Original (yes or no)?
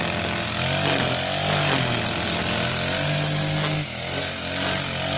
yes